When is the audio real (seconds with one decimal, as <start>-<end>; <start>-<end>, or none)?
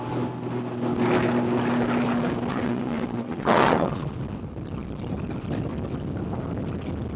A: 0.0-2.5; 4.1-7.2